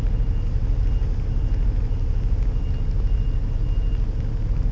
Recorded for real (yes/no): yes